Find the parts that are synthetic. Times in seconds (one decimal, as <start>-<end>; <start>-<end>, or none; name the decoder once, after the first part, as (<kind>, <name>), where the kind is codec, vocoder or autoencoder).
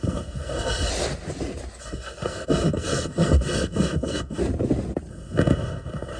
0.0-0.9 (codec, SNAC); 1.8-4.4; 5.1-6.2